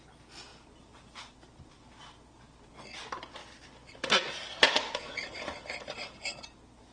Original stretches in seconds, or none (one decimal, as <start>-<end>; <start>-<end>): 0.0-3.4; 5.3-6.9